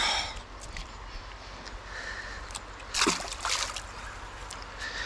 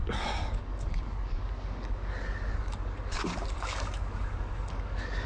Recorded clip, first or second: first